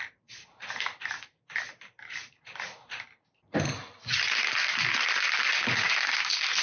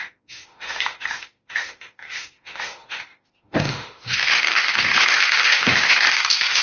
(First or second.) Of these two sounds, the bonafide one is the first